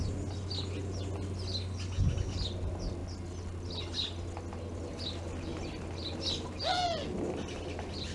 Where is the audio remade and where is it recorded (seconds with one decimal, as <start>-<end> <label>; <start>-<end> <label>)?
0.0-8.1 recorded

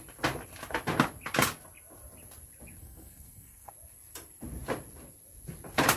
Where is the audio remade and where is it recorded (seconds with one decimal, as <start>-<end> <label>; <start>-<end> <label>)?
0.0-2.8 recorded; 2.8-3.7 remade; 3.7-6.0 recorded

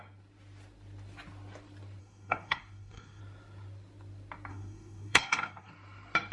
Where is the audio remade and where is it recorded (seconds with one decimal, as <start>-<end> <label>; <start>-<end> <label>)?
0.0-2.0 recorded; 2.0-3.2 remade; 3.2-4.5 recorded; 4.5-5.7 remade; 5.7-6.3 recorded

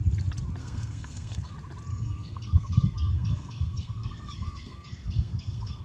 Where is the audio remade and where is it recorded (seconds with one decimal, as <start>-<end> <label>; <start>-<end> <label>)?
0.0-0.6 recorded; 0.6-1.5 remade; 1.5-1.9 recorded; 1.9-5.8 remade

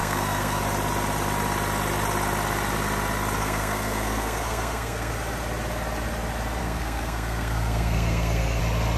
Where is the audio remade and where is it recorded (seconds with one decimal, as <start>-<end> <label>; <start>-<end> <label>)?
0.0-0.6 remade; 0.6-3.4 recorded; 3.4-5.1 remade; 5.1-6.6 recorded; 6.6-8.6 remade; 8.6-9.0 recorded

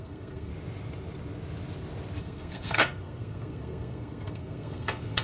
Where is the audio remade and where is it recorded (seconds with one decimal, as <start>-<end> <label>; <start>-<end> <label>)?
0.0-0.5 remade; 0.5-2.2 recorded; 2.2-5.2 remade

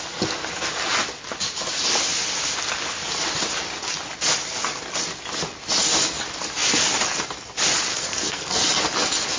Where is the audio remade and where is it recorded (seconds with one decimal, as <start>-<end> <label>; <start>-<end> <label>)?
0.0-7.9 recorded; 7.9-8.7 remade; 8.7-9.4 recorded